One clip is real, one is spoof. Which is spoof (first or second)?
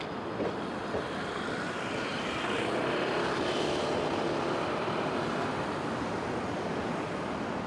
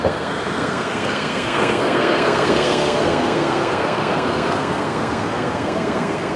second